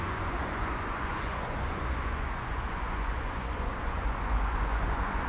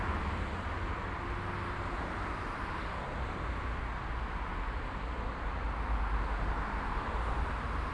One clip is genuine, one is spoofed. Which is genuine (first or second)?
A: second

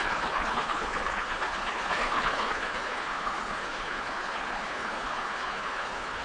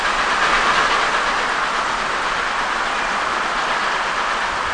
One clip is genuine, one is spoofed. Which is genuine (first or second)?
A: second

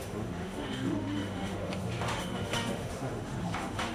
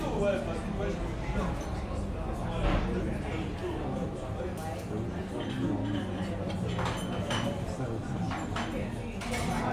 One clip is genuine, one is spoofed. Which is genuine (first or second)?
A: second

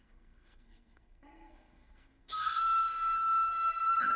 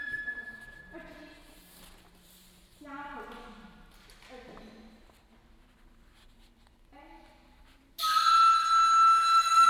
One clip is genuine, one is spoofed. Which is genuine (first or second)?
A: second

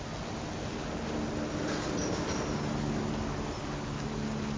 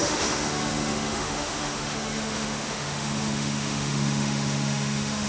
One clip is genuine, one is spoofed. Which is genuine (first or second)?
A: first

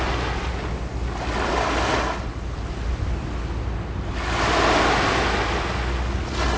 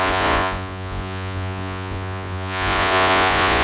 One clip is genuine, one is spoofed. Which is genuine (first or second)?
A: first